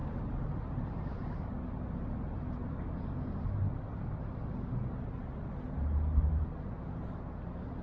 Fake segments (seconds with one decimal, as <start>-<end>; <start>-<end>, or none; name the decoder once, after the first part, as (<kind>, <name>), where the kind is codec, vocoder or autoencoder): none